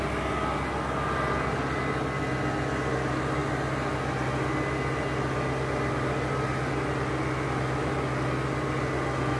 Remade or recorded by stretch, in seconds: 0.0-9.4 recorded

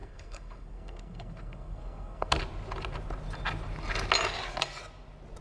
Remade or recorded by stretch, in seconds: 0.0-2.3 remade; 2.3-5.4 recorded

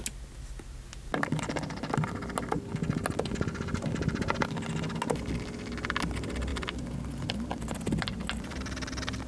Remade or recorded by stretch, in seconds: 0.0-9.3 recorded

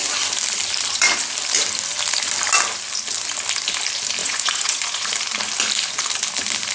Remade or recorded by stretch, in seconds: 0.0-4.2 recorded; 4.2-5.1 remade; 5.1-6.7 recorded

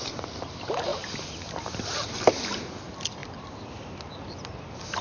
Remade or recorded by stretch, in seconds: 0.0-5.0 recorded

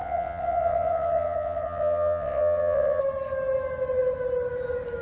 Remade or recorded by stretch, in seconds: 0.0-3.0 remade; 3.0-5.0 recorded